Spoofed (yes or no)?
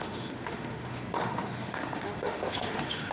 yes